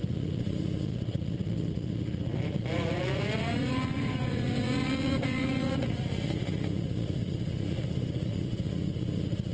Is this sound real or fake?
fake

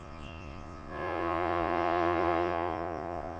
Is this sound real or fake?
fake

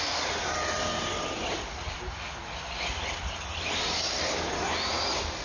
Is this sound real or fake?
real